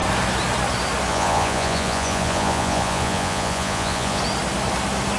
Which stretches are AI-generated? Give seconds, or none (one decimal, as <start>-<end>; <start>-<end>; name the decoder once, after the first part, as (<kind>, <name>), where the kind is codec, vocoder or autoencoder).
1.1-4.2 (vocoder, Vocos)